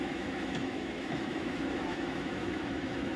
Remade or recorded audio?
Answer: remade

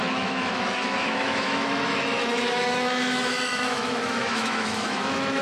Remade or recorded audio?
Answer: remade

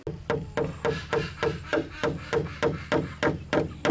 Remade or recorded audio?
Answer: recorded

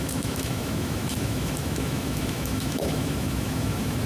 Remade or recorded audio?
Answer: remade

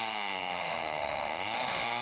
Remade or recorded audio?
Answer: remade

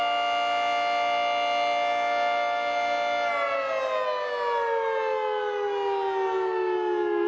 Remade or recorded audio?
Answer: recorded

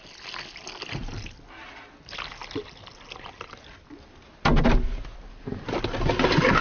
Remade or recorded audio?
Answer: recorded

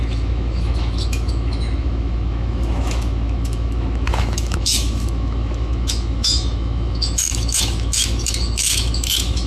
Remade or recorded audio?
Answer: remade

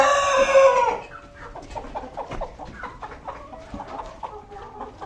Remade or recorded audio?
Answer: recorded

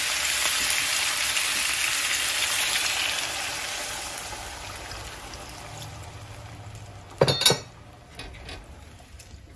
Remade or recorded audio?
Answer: recorded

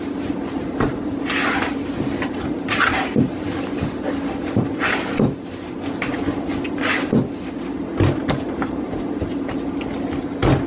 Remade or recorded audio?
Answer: recorded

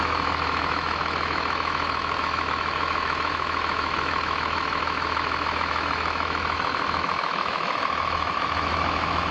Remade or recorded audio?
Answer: remade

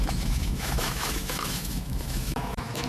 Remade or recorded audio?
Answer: remade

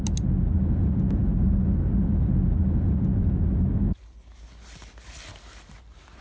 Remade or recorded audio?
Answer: recorded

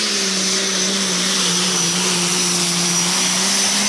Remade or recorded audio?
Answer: recorded